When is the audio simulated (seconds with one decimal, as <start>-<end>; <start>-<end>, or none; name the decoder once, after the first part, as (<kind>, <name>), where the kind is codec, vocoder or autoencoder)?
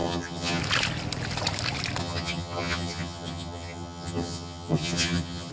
0.0-0.6 (vocoder, HiFi-GAN); 2.0-5.5